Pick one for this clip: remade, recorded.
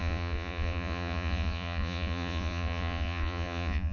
remade